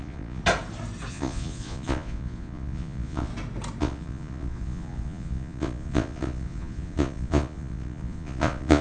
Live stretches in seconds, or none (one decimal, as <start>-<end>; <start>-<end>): 0.4-1.1; 3.3-3.8